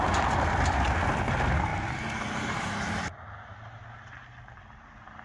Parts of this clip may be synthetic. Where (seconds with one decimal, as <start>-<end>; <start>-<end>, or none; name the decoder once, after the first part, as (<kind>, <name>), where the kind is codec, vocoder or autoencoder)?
none